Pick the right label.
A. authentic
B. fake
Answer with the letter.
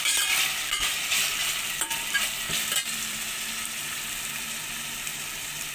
B